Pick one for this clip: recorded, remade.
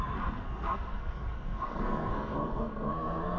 remade